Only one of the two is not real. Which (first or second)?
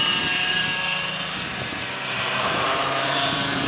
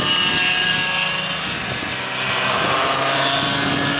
first